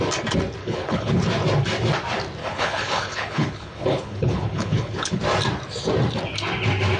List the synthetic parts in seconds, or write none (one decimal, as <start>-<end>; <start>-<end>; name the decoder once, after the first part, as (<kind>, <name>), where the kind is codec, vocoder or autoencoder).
0.6-1.2 (codec, HILCodec); 2.4-5.2